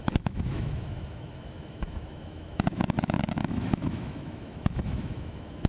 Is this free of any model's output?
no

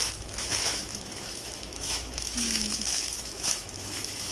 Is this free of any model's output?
no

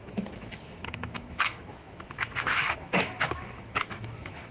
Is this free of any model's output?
no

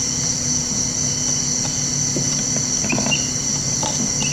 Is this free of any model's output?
yes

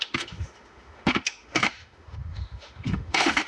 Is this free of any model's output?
no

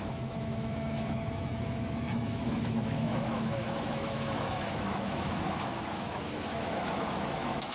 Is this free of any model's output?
no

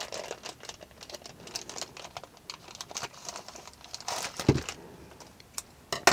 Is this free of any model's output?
yes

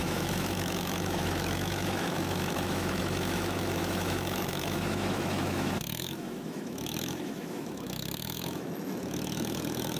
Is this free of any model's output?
no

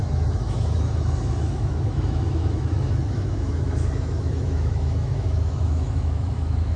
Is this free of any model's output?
no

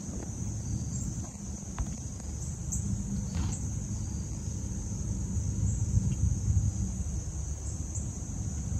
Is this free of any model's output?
yes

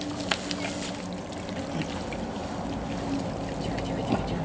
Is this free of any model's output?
yes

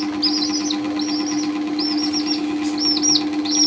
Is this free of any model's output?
yes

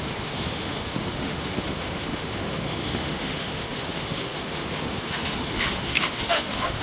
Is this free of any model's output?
no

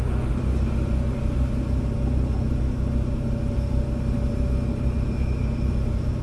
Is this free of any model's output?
yes